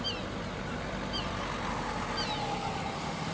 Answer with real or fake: real